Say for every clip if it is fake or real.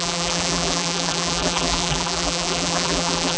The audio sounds fake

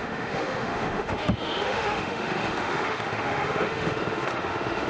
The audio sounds fake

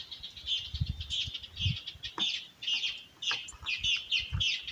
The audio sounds real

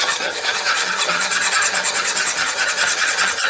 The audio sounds fake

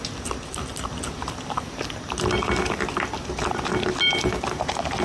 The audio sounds real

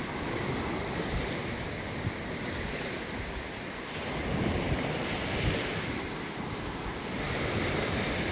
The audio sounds real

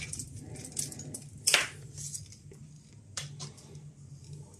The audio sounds real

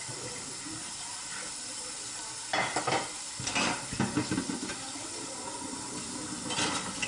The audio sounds real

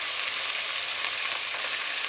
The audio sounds real